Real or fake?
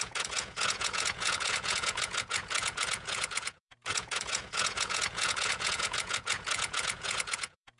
fake